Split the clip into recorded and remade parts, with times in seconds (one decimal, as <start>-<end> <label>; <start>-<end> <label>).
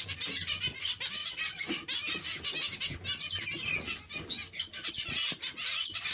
0.0-1.2 remade; 1.2-4.9 recorded; 4.9-6.1 remade